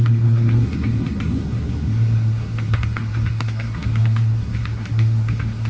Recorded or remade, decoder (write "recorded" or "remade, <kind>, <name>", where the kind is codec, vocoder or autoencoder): remade, codec, SNAC